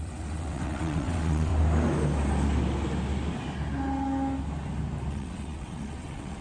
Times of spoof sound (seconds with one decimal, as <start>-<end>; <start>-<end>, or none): 0.0-1.5; 5.1-6.4